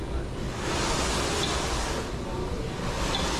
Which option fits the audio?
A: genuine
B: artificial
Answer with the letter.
A